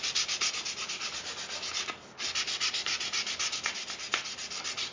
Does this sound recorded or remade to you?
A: recorded